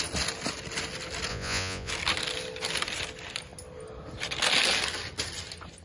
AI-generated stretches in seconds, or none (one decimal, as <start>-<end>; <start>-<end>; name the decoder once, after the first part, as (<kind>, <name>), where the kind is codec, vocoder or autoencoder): 1.3-1.9 (vocoder, Vocos)